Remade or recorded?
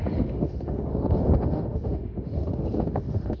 remade